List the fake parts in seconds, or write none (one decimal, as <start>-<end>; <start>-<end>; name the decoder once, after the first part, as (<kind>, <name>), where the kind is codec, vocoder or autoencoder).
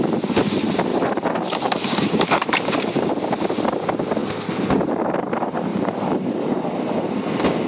0.9-3.1 (vocoder, BigVGAN v2); 5.7-6.4